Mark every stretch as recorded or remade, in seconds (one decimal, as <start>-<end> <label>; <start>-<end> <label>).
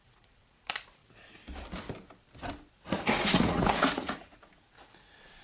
0.0-1.0 remade; 1.0-2.7 recorded; 2.7-5.4 remade